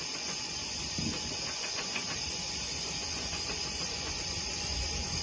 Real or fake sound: fake